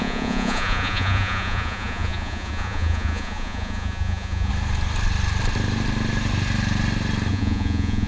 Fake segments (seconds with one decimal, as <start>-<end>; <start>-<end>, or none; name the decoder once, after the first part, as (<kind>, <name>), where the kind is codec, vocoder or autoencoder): 0.0-4.5 (vocoder, Vocos); 7.3-8.1